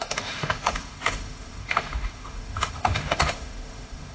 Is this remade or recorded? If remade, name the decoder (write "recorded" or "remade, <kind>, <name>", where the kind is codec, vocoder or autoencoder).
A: remade, autoencoder, DAC-VAE